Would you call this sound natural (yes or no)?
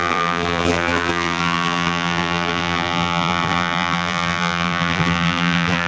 no